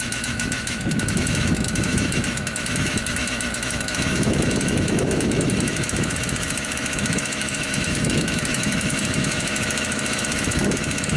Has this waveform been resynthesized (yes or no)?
yes